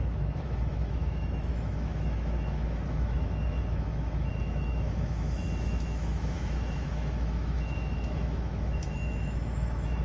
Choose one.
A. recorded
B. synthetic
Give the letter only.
B